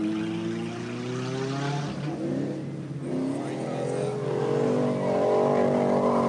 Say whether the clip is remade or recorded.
recorded